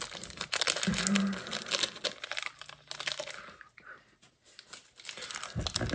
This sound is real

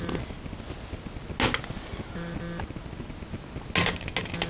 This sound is real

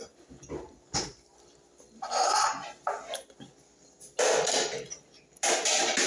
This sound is real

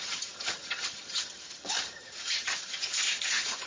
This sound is fake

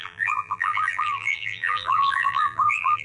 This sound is fake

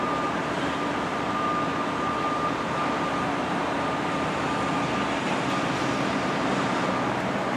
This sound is fake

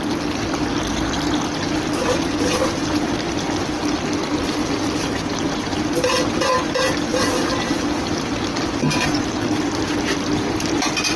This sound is real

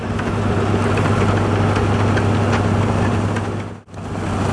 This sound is real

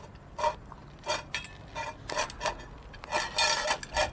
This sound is real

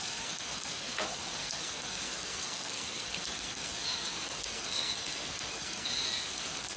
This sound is fake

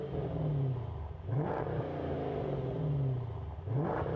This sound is real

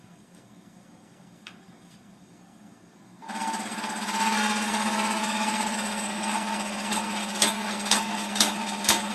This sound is fake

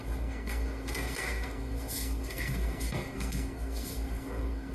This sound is fake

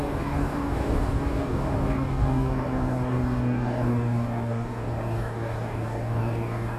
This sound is fake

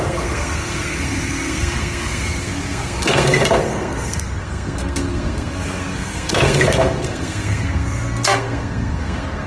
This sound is fake